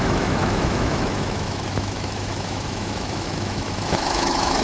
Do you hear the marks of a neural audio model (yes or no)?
yes